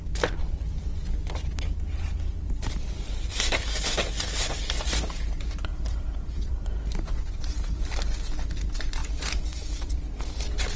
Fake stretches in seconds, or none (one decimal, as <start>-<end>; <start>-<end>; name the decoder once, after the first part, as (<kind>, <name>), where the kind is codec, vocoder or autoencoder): 5.7-8.5 (vocoder, BigVGAN v2)